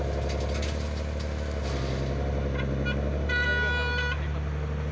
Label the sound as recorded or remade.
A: recorded